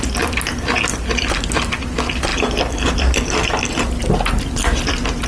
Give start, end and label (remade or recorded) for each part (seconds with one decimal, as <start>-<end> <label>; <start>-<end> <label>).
0.0-5.3 recorded